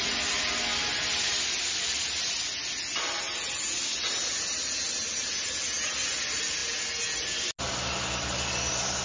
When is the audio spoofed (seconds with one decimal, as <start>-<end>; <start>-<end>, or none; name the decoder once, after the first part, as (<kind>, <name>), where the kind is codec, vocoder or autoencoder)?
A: none